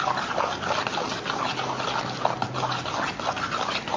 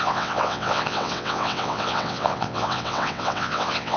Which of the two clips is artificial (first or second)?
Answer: second